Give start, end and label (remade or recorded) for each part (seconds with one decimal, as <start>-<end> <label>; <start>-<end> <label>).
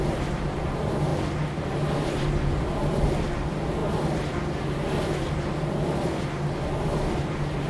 0.0-7.7 recorded